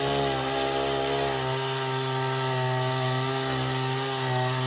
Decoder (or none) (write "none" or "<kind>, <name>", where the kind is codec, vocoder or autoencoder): none